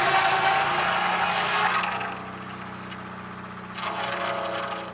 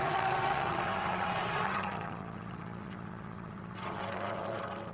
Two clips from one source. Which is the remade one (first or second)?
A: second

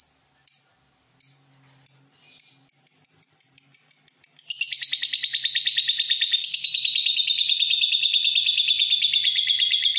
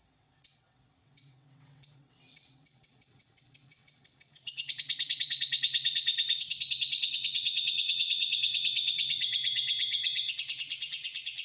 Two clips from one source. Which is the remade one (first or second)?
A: second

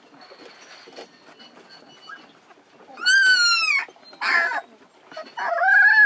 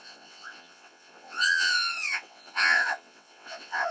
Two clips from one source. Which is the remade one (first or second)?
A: second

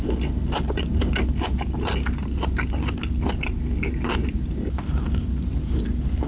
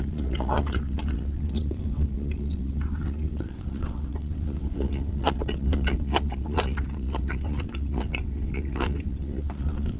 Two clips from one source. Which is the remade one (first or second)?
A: second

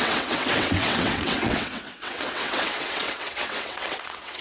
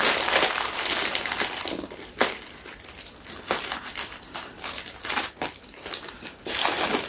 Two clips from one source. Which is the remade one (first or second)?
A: first